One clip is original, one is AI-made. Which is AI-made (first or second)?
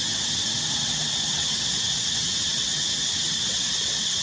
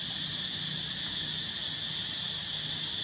first